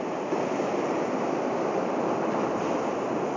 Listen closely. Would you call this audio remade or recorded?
recorded